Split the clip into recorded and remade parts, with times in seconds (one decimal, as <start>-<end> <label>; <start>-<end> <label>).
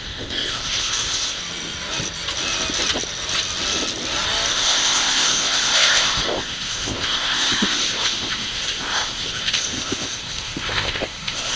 0.0-1.4 remade; 1.4-4.5 recorded; 4.5-11.6 remade